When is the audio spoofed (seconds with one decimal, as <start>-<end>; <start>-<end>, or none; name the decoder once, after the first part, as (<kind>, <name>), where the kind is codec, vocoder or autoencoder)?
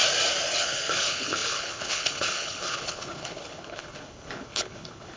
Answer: 0.6-5.2 (codec, HILCodec)